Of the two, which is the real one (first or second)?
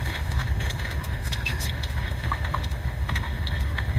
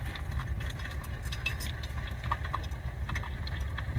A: second